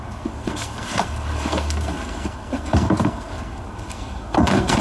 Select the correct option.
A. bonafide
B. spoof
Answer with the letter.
B